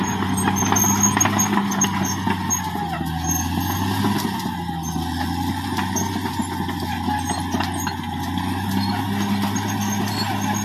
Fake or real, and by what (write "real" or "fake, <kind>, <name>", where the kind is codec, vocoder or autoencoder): real